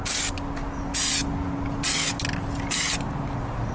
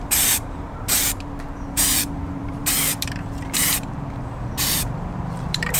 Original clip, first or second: first